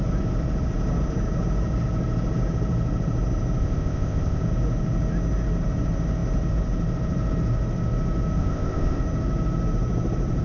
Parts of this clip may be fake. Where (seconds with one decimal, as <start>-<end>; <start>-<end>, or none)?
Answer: 3.6-4.4; 8.4-9.0